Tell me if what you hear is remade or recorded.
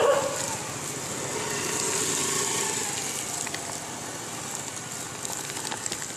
recorded